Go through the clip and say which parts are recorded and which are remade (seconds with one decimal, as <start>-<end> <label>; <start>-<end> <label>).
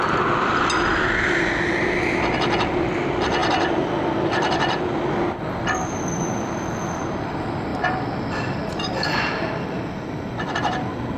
0.0-11.2 recorded